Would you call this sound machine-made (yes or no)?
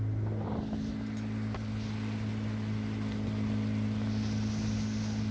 no